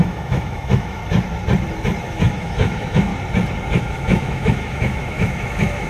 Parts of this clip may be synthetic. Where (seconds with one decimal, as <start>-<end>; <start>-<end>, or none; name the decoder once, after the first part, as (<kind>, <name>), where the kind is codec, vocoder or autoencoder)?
0.0-1.0 (autoencoder, DAC-VAE); 2.0-3.1; 3.8-5.9